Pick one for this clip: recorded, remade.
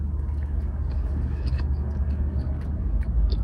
remade